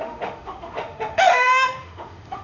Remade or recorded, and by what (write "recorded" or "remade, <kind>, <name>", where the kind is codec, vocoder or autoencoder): remade, autoencoder, DAC-VAE